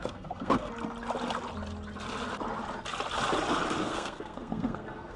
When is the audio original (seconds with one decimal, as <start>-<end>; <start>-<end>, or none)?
0.7-3.8